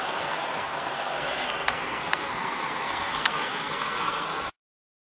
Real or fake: fake